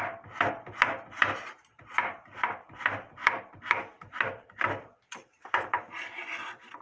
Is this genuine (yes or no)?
no